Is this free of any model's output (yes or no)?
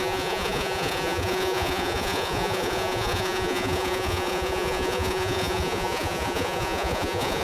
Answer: no